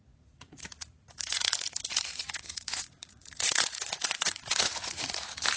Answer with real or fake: fake